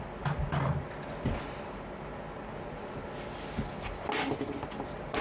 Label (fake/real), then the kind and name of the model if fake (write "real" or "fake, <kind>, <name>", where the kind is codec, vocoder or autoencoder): real